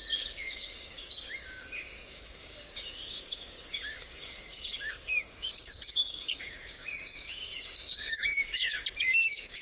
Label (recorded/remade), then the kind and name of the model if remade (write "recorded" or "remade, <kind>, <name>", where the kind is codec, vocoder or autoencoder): remade, codec, DAC